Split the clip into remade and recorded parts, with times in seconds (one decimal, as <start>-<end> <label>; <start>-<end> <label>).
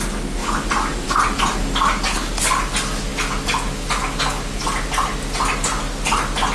0.0-0.4 recorded; 0.4-1.4 remade; 1.4-6.5 recorded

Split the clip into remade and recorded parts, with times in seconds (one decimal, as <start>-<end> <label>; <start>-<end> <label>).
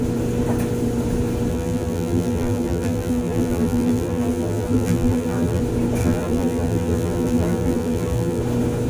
0.0-1.5 recorded; 1.5-5.6 remade; 5.6-6.0 recorded; 6.0-8.4 remade; 8.4-8.9 recorded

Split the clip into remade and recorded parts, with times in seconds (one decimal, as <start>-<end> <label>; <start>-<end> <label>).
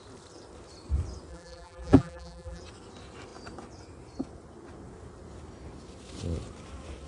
0.0-1.3 recorded; 1.3-2.6 remade; 2.6-7.1 recorded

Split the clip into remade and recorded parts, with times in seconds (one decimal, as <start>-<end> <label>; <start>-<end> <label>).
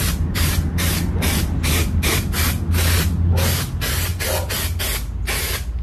0.0-5.8 recorded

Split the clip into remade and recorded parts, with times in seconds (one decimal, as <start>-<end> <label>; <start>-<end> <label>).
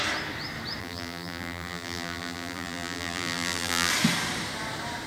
0.0-0.8 recorded; 0.8-3.9 remade; 3.9-5.1 recorded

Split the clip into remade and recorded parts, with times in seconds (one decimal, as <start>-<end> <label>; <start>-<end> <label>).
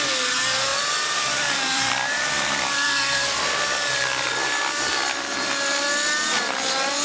0.0-0.7 recorded; 0.7-4.9 remade; 4.9-7.0 recorded